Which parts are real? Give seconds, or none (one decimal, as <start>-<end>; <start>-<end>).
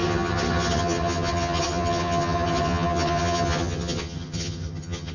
none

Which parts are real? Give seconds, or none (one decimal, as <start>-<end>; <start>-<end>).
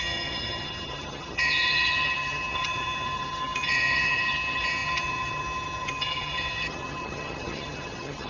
none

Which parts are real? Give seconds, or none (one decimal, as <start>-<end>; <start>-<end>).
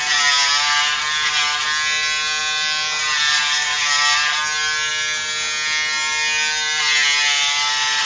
0.0-8.1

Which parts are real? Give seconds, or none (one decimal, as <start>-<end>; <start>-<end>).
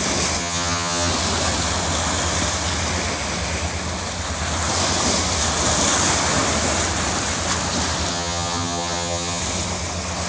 0.0-0.4; 1.1-8.1; 9.4-10.3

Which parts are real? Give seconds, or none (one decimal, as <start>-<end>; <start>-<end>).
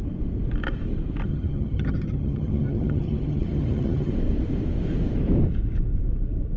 0.0-1.3; 4.1-6.6